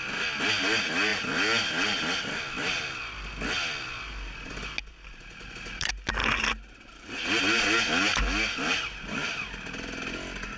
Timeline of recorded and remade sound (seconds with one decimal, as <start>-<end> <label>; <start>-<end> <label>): 0.0-10.6 recorded